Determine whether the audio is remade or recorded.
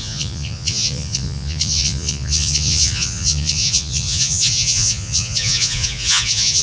remade